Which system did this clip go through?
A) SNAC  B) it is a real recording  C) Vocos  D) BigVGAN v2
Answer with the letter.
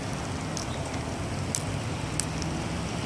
B